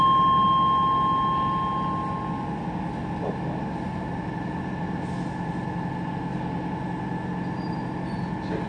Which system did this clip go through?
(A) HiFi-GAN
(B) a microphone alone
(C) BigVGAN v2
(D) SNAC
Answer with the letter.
B